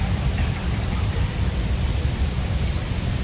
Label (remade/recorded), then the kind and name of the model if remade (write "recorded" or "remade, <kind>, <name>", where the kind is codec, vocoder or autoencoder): remade, vocoder, BigVGAN v2